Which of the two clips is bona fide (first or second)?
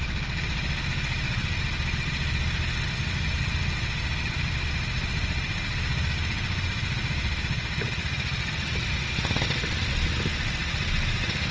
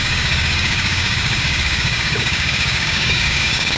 first